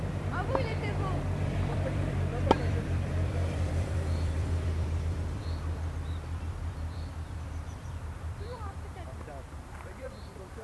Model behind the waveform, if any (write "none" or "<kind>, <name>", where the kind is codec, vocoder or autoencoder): vocoder, BigVGAN v2